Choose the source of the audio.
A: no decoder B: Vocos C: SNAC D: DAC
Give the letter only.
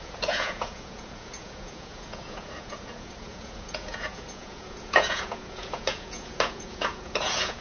B